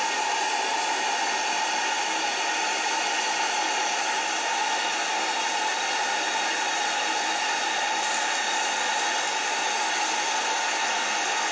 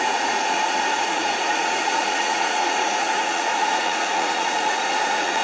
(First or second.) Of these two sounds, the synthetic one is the second